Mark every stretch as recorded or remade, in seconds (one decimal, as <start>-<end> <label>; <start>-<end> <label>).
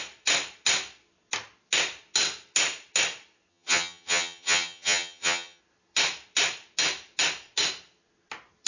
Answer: 0.0-3.5 recorded; 3.5-5.6 remade; 5.6-8.7 recorded